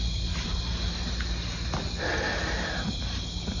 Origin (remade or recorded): recorded